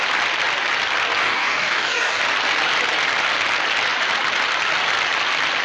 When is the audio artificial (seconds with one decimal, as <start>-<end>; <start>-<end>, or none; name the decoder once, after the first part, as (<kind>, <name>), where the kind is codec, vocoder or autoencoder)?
1.2-2.2 (codec, DAC)